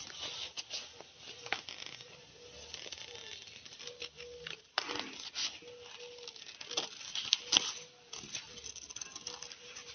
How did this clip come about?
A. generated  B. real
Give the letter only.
B